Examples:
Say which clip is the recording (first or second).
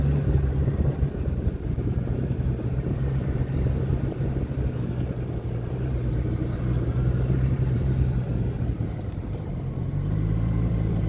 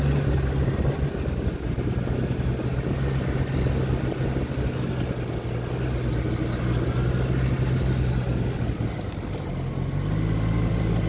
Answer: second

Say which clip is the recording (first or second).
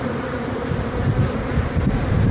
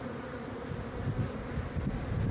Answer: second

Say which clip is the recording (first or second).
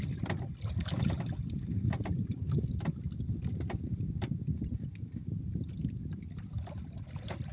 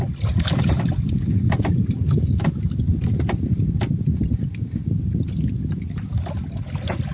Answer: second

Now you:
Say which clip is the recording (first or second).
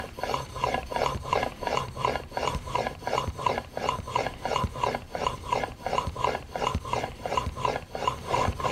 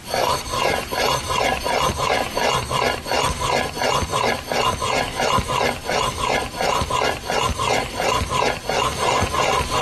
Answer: second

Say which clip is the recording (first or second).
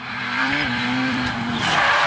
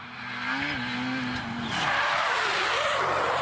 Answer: second